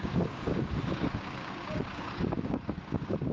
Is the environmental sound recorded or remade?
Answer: remade